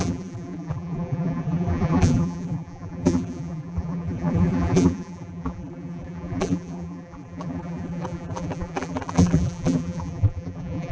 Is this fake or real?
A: fake